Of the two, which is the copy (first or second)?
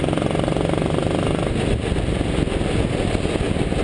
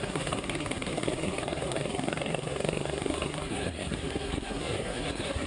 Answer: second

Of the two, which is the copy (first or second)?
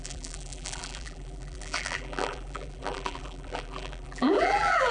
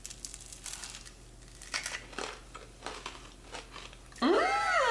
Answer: first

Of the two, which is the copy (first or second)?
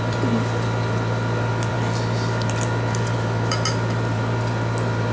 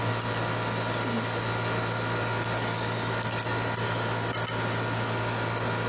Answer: first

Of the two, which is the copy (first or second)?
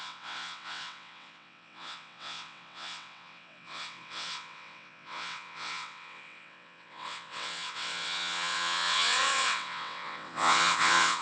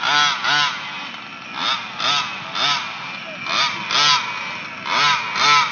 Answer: first